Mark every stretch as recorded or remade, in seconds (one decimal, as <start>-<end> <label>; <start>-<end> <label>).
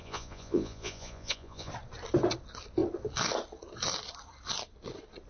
0.0-1.7 remade; 1.7-5.3 recorded